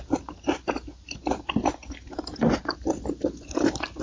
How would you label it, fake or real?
real